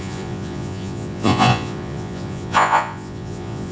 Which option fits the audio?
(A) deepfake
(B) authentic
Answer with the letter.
A